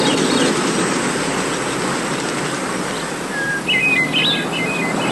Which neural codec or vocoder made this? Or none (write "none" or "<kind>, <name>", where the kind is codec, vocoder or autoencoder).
none